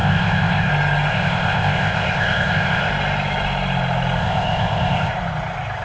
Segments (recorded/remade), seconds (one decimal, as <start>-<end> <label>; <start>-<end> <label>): 0.0-0.7 remade; 0.7-1.1 recorded; 1.1-2.9 remade; 2.9-4.2 recorded; 4.2-5.1 remade; 5.1-5.8 recorded